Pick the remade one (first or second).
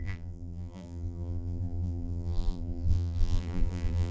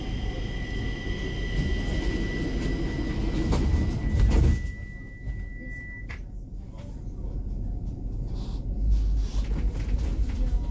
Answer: first